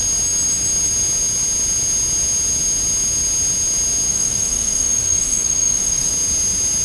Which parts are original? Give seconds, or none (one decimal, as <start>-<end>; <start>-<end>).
0.0-4.1; 6.1-6.8